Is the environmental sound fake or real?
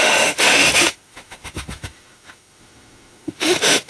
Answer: fake